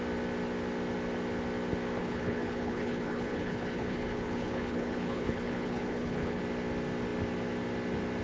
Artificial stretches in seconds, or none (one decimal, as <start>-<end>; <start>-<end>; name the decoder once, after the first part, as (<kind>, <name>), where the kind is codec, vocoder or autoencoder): 2.0-6.4 (codec, HILCodec)